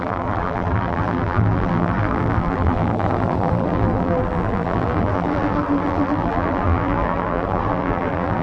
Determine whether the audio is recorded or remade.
remade